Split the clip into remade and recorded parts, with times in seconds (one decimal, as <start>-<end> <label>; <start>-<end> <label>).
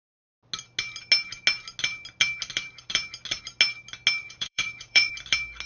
0.0-4.2 recorded; 4.2-5.1 remade; 5.1-5.7 recorded